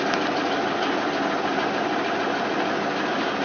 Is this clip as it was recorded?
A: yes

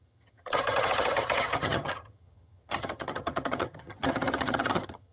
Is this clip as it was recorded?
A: no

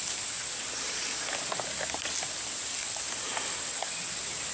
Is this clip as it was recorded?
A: yes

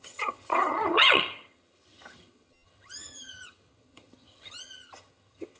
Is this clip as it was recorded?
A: no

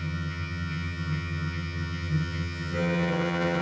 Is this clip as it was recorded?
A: no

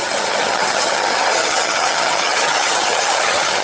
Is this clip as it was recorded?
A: no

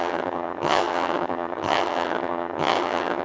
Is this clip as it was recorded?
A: no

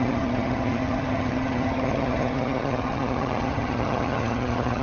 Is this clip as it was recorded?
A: no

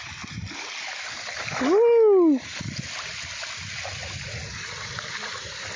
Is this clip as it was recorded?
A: yes